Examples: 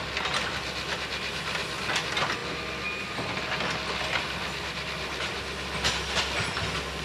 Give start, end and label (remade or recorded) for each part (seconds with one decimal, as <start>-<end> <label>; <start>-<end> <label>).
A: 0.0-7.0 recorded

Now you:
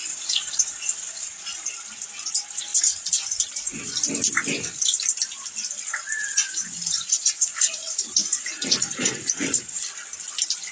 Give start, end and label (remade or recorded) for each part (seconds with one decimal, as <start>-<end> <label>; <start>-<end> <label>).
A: 0.0-1.7 remade; 1.7-2.7 recorded; 2.7-3.2 remade; 3.2-6.2 recorded; 6.2-9.8 remade; 9.8-10.7 recorded

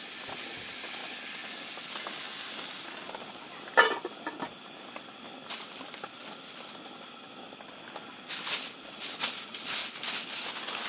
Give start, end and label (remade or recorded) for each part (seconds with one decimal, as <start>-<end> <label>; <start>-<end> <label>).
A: 0.0-10.9 recorded

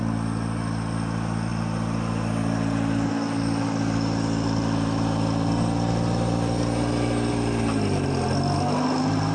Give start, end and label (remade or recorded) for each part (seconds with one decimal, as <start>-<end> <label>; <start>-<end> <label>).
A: 0.0-9.3 recorded

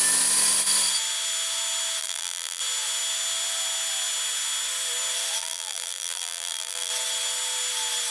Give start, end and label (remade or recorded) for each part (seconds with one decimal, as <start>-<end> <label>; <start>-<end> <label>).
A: 0.0-2.0 recorded; 2.0-2.6 remade; 2.6-5.4 recorded; 5.4-6.9 remade; 6.9-8.1 recorded

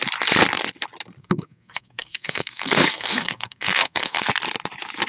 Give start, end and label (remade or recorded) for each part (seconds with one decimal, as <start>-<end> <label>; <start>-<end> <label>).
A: 0.0-1.2 recorded; 1.2-4.3 remade; 4.3-5.1 recorded